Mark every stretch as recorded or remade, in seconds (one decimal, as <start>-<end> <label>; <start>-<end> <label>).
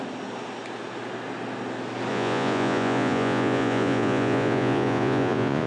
0.0-2.1 recorded; 2.1-5.7 remade